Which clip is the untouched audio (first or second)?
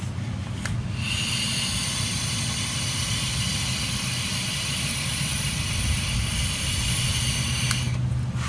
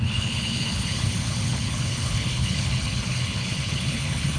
first